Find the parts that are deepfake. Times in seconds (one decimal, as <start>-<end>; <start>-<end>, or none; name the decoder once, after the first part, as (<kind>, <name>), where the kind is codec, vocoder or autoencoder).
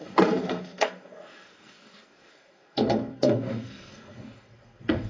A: 0.0-5.1 (codec, SNAC)